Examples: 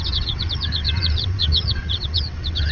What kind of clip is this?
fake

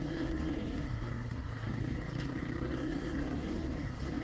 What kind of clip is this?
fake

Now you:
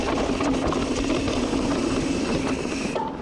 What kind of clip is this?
real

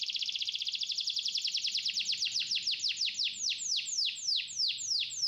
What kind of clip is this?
real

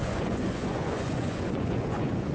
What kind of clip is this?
fake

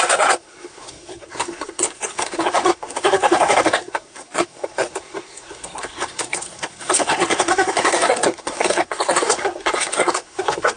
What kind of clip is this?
fake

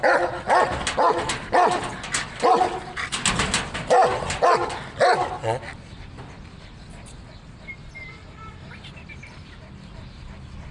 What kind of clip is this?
real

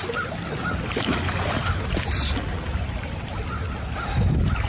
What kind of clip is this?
real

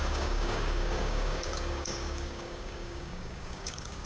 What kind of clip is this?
fake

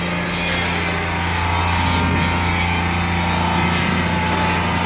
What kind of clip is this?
real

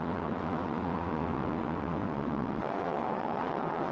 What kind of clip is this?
fake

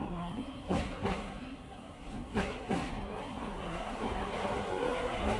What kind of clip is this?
fake